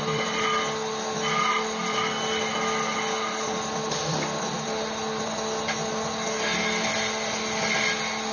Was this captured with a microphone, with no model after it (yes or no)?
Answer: yes